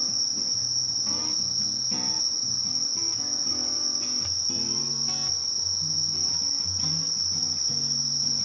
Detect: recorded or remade recorded